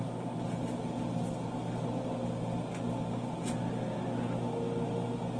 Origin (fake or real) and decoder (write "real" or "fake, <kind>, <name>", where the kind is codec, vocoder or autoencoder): real